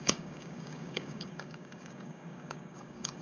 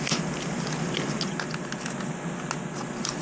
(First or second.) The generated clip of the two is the first